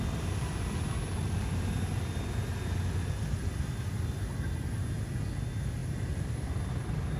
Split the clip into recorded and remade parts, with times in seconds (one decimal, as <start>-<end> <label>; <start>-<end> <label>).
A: 0.0-7.2 recorded